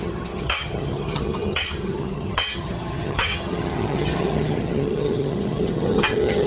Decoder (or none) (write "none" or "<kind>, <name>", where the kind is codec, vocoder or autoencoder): vocoder, HiFi-GAN